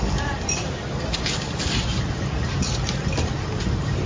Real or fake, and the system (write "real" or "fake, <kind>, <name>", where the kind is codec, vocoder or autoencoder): real